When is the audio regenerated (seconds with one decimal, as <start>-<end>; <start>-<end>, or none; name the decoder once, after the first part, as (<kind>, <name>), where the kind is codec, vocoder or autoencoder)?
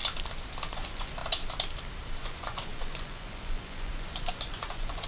0.7-1.2 (vocoder, Vocos); 2.2-5.1